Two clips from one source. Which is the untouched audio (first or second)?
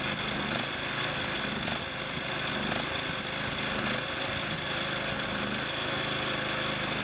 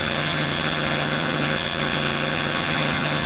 first